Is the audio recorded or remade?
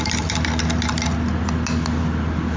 recorded